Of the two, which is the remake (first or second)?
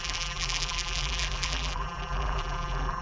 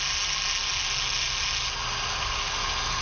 first